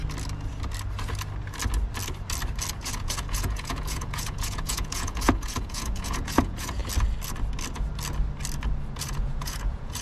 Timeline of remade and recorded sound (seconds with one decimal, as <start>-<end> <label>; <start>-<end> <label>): 0.0-2.7 recorded; 2.7-6.8 remade; 6.8-9.0 recorded; 9.0-10.0 remade